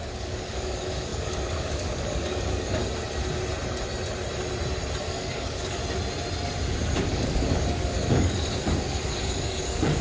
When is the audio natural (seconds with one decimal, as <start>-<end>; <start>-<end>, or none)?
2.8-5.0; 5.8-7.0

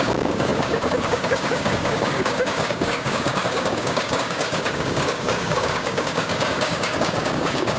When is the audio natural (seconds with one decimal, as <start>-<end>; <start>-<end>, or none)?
none

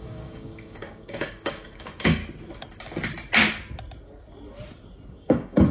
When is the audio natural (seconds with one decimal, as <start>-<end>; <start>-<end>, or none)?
2.2-5.1